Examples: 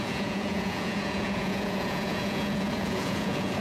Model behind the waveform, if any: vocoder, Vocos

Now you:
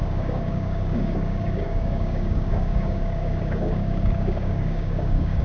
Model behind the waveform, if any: codec, DAC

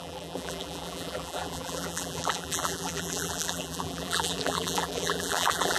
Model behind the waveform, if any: vocoder, BigVGAN v2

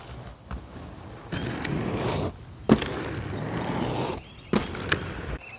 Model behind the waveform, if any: none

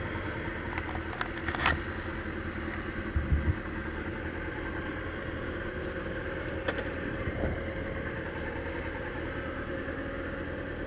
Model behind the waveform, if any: none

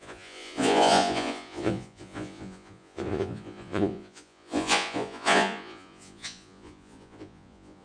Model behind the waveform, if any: vocoder, Vocos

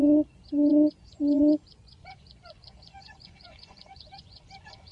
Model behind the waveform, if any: vocoder, Vocos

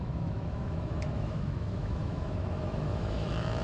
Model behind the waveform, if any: autoencoder, DAC-VAE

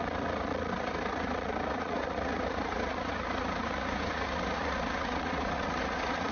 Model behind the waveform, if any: vocoder, Vocos